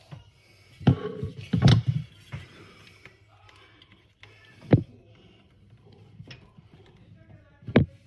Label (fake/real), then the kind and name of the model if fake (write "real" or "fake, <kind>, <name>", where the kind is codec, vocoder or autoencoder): real